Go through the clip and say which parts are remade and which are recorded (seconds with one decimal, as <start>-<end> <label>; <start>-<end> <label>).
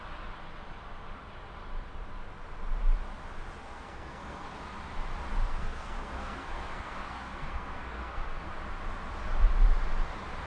0.0-3.6 recorded; 3.6-4.5 remade; 4.5-5.4 recorded; 5.4-8.5 remade; 8.5-10.5 recorded